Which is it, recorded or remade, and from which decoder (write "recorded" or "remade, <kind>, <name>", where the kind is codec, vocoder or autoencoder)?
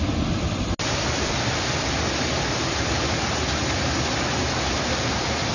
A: recorded